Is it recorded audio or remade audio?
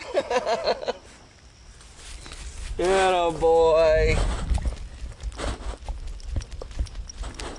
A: recorded